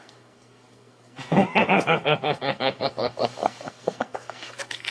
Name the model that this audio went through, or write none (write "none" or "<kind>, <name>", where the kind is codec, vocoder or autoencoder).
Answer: codec, SNAC